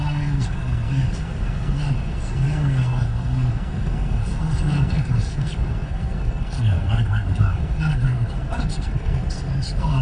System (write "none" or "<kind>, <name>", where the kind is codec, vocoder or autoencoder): codec, SNAC